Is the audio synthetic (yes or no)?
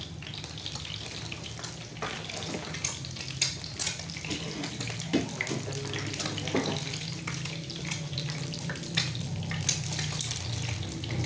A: no